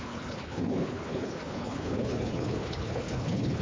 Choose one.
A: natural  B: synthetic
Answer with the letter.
B